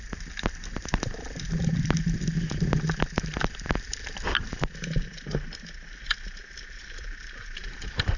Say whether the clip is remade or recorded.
recorded